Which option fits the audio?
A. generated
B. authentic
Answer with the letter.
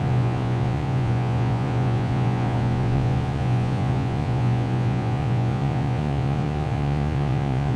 A